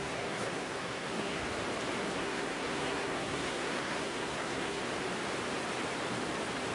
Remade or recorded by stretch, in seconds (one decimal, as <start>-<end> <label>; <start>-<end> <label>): 0.0-1.4 remade; 1.4-2.0 recorded; 2.0-4.8 remade; 4.8-6.7 recorded